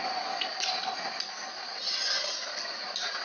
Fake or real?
real